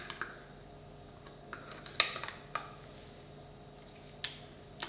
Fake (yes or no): no